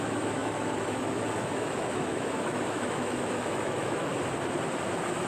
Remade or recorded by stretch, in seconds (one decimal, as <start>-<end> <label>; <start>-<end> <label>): 0.0-4.1 remade; 4.1-5.3 recorded